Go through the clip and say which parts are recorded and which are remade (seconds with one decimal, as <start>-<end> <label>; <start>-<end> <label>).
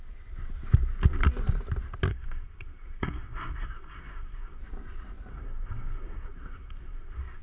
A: 0.0-2.1 recorded; 2.1-4.6 remade; 4.6-5.3 recorded; 5.3-7.4 remade